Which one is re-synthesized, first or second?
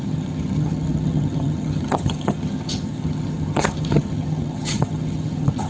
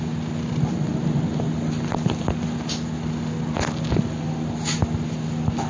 first